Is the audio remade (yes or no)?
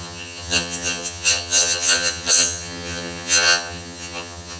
yes